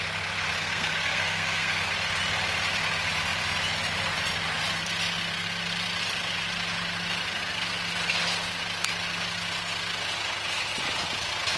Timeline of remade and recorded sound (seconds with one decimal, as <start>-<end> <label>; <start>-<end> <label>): 0.0-0.6 recorded; 0.6-1.9 remade; 1.9-11.6 recorded

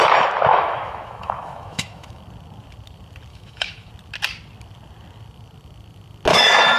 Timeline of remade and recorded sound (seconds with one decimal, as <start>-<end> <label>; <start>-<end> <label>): 0.0-0.5 recorded; 0.5-2.2 remade; 2.2-3.3 recorded; 3.3-3.9 remade; 3.9-6.3 recorded; 6.3-6.8 remade

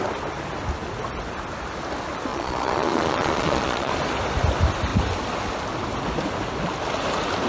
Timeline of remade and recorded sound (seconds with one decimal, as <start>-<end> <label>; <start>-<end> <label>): 0.0-2.3 recorded; 2.3-3.9 remade; 3.9-7.5 recorded

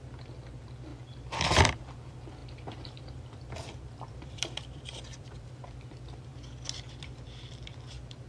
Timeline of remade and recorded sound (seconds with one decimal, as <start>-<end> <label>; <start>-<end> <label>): 0.0-0.9 remade; 0.9-1.7 recorded; 1.7-6.3 remade; 6.3-6.9 recorded; 6.9-8.3 remade

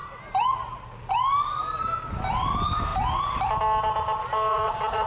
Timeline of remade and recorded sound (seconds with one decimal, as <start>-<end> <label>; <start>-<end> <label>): 0.0-4.5 recorded; 4.5-5.1 remade

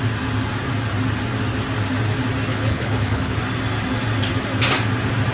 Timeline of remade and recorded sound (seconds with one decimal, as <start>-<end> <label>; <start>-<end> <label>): 0.0-2.5 recorded; 2.5-3.4 remade; 3.4-5.3 recorded